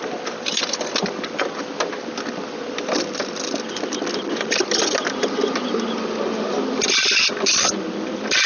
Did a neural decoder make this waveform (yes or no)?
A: no